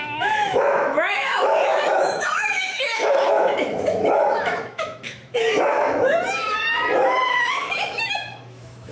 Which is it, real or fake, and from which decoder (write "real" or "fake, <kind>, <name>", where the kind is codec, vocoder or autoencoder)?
fake, autoencoder, DAC-VAE